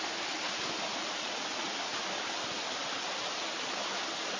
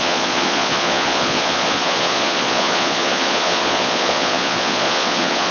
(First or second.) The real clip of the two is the first